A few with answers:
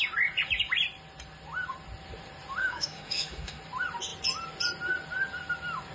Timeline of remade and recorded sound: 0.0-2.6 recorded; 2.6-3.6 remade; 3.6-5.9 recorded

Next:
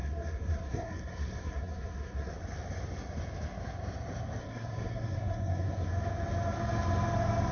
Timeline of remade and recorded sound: 0.0-2.3 remade; 2.3-4.4 recorded; 4.4-5.9 remade; 5.9-7.5 recorded

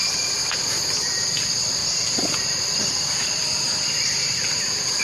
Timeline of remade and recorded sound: 0.0-1.8 recorded; 1.8-5.0 remade

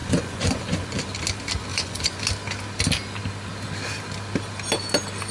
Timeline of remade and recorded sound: 0.0-1.0 remade; 1.0-1.7 recorded; 1.7-2.2 remade; 2.2-5.3 recorded